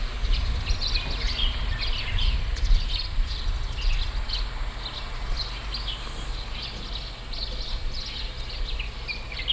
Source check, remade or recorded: recorded